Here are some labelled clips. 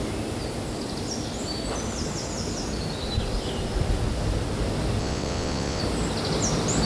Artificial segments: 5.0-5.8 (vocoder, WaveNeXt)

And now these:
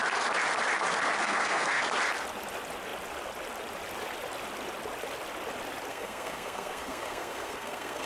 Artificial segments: 1.2-1.8 (codec, SNAC); 5.9-8.1

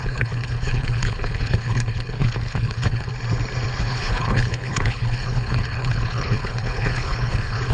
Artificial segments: 0.0-3.1 (codec, HILCodec); 3.8-7.7

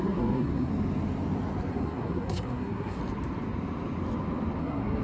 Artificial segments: 0.0-0.7 (codec, SNAC); 1.7-3.0; 4.6-5.0

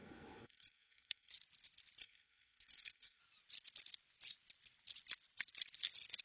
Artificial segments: 0.0-1.3 (codec, SNAC); 2.0-3.2

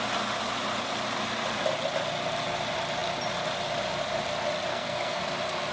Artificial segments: 4.7-5.2 (codec, SNAC)

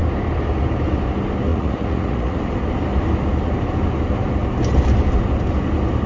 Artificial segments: 1.5-2.4 (vocoder, Vocos)